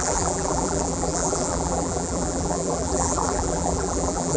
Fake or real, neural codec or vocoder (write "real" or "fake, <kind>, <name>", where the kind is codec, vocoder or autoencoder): fake, vocoder, BigVGAN v2